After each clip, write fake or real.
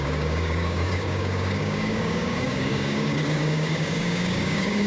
fake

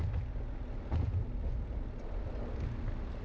real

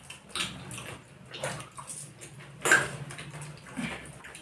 real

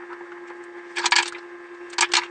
real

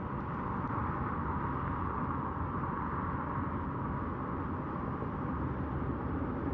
real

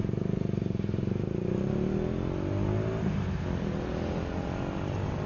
real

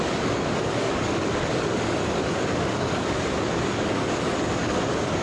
fake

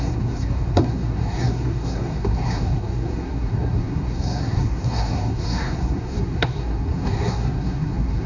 fake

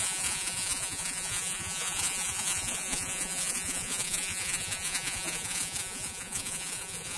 fake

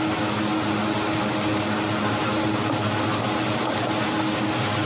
real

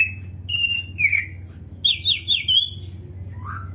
real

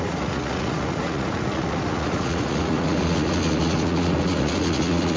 fake